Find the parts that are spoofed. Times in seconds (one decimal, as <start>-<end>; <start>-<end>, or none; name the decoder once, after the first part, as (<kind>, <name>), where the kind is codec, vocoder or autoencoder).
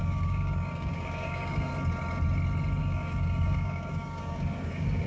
0.0-1.7 (codec, DAC); 2.8-5.1